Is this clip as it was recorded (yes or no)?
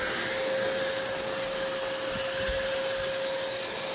yes